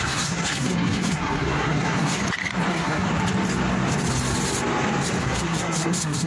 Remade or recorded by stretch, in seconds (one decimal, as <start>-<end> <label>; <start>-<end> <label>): 0.0-2.2 remade; 2.2-2.7 recorded; 2.7-3.1 remade; 3.1-5.2 recorded; 5.2-6.3 remade